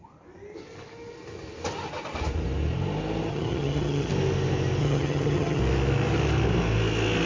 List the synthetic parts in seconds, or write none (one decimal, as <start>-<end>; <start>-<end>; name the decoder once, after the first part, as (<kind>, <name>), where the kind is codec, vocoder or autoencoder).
3.3-4.1 (vocoder, HiFi-GAN); 4.8-5.6